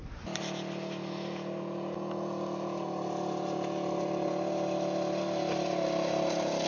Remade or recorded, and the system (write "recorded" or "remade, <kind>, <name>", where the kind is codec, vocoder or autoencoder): recorded